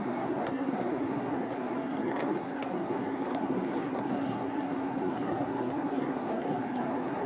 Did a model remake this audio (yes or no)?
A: yes